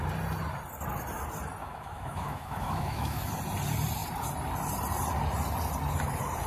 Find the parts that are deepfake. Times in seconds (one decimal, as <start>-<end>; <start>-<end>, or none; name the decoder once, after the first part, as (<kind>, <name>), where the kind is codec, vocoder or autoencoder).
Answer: 1.6-3.3 (autoencoder, DAC-VAE)